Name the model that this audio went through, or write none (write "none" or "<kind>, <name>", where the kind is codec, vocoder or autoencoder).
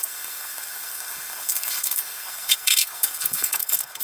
codec, SNAC